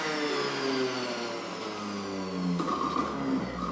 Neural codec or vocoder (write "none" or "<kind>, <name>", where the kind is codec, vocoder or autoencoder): none